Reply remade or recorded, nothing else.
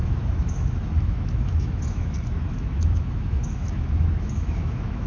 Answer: remade